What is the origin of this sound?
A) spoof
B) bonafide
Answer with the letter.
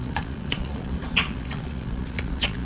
A